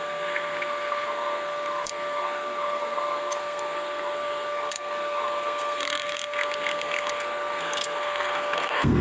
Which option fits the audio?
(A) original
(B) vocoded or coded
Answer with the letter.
B